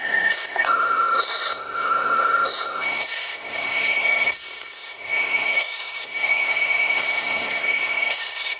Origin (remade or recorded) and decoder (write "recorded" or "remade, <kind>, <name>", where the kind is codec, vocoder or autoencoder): remade, codec, SNAC